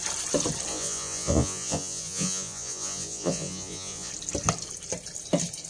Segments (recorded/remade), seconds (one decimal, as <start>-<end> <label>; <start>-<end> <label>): 0.0-0.7 recorded; 0.7-4.1 remade; 4.1-5.7 recorded